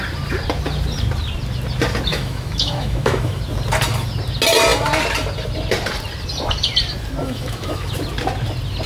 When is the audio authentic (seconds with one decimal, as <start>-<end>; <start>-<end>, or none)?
0.0-2.1; 3.4-7.2; 7.9-8.9